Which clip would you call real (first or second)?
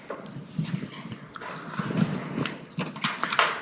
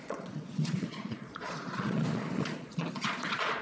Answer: first